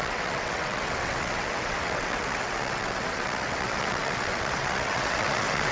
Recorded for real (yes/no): no